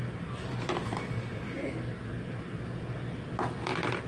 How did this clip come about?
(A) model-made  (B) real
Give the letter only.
B